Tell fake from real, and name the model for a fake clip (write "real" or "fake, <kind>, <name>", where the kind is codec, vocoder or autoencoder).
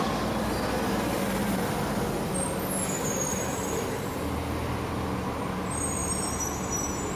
real